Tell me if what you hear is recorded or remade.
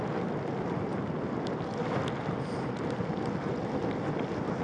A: recorded